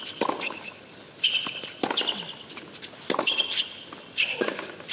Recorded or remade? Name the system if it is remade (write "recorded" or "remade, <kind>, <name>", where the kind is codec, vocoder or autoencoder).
recorded